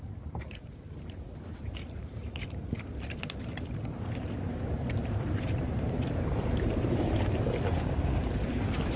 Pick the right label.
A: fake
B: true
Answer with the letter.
A